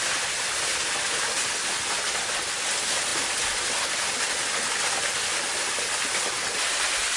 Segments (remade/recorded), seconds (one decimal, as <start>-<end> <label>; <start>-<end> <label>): 0.0-7.2 recorded